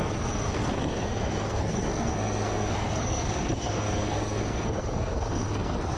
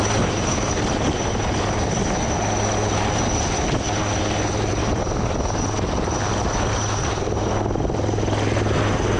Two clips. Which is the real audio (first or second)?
second